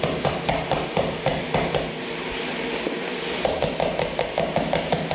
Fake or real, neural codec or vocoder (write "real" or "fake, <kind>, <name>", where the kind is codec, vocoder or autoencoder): real